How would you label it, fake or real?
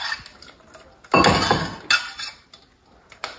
real